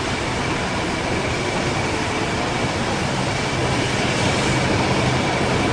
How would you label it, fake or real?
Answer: real